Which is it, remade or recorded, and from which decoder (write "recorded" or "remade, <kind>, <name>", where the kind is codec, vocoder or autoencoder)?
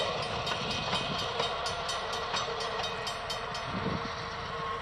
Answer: recorded